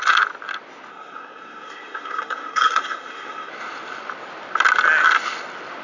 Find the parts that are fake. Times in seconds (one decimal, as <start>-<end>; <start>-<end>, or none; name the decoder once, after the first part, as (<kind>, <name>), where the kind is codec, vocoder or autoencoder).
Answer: 0.9-3.5 (codec, SNAC)